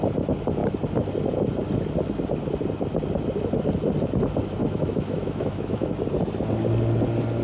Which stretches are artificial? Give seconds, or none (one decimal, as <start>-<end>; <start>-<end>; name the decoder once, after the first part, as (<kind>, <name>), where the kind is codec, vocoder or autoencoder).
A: 4.6-5.9 (autoencoder, DAC-VAE)